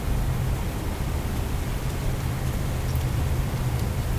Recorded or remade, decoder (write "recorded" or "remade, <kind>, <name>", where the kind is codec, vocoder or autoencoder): remade, vocoder, BigVGAN v2